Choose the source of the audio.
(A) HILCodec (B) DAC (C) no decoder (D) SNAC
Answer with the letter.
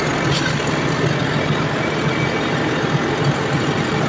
C